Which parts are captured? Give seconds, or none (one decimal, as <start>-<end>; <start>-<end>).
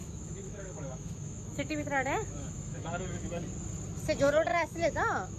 3.2-4.5